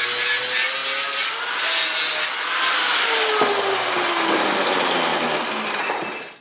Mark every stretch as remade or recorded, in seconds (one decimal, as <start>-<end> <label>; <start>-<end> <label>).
0.0-6.4 recorded